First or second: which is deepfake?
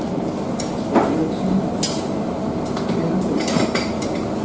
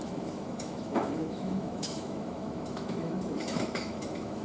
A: second